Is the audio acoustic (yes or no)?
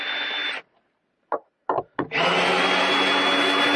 yes